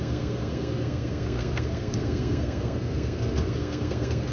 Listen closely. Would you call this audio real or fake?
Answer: fake